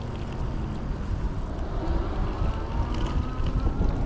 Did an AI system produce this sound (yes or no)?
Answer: no